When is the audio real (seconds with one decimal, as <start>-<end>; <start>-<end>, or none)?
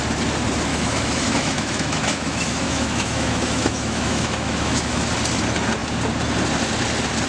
0.0-0.7; 5.1-7.3